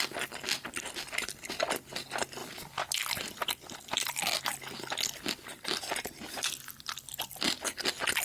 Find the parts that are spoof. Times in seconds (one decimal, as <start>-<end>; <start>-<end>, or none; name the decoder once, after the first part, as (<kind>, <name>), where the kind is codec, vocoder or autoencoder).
2.4-4.4 (vocoder, BigVGAN v2)